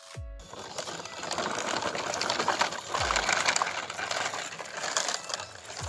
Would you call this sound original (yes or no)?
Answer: yes